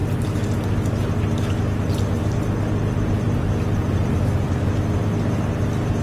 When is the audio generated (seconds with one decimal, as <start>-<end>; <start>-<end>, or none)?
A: none